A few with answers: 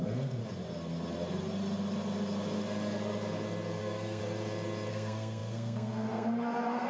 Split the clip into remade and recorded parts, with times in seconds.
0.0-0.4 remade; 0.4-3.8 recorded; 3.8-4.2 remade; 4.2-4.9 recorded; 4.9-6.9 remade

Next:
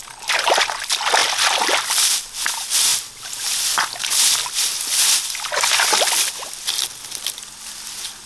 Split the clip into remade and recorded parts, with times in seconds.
0.0-8.3 recorded

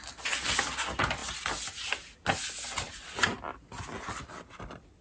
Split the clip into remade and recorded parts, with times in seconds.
0.0-5.0 recorded